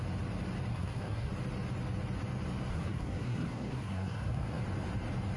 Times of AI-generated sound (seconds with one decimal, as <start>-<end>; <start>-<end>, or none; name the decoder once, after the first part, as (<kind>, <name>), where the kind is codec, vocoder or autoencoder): 0.7-1.3 (codec, SNAC); 2.7-4.6